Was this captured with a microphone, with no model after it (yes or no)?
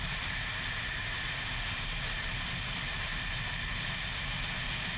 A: yes